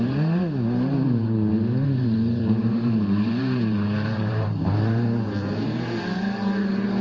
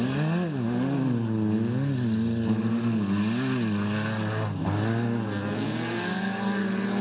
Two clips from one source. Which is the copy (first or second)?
first